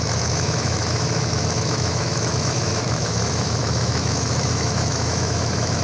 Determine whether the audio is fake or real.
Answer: fake